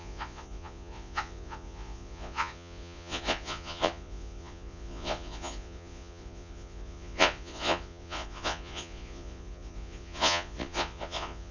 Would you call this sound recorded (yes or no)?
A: no